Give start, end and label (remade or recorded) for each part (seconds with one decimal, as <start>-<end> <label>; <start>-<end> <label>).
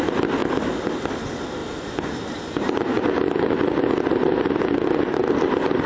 0.0-5.9 recorded